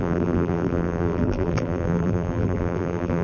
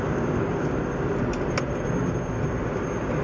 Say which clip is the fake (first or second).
first